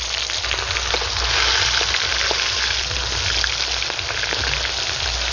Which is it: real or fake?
real